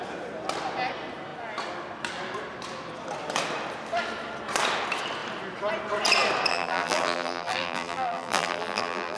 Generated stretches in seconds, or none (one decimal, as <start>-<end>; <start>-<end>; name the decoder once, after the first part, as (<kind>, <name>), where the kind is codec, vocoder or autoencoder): 6.5-9.2 (vocoder, BigVGAN v2)